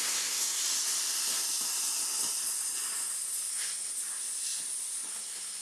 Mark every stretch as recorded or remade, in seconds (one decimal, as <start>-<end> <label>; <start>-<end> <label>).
0.0-0.6 remade; 0.6-3.5 recorded; 3.5-3.9 remade; 3.9-5.1 recorded; 5.1-5.6 remade